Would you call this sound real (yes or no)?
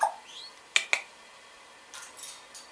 yes